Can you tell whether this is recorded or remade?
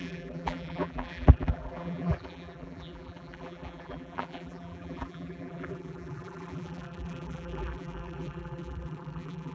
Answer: remade